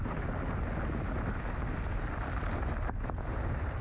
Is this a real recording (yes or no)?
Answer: yes